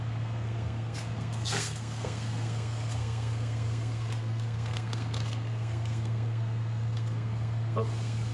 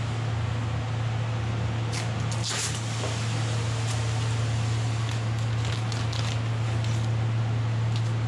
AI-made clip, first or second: first